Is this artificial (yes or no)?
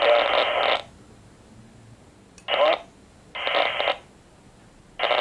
no